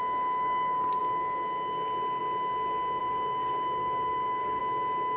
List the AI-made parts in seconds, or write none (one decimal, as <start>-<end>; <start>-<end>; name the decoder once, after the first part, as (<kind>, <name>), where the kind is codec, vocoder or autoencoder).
3.0-4.6 (codec, DAC)